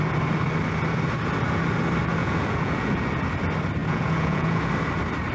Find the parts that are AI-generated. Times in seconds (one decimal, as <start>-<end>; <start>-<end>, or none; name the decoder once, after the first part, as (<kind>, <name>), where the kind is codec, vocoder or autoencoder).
2.2-3.0 (vocoder, Vocos); 3.8-4.6